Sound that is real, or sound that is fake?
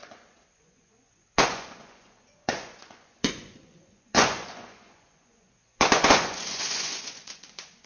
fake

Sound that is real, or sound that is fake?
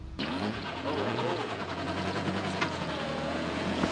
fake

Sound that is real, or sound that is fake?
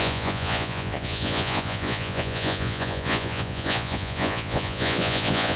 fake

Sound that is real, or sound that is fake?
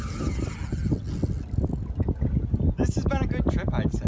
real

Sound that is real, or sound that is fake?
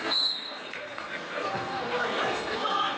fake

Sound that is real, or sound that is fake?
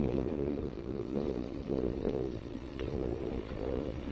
fake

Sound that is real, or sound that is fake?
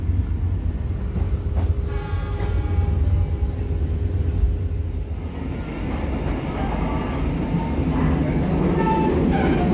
real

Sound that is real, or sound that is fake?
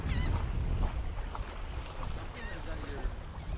real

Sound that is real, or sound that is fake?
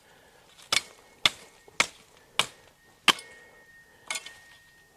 real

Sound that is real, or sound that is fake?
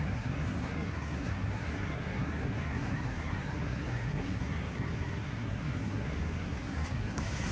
fake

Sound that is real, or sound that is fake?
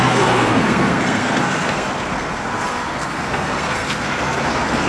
fake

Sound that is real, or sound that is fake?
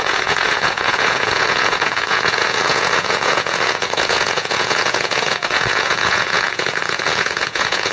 fake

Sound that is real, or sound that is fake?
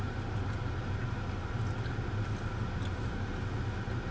real